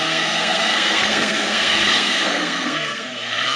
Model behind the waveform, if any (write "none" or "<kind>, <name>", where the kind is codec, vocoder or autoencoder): codec, SNAC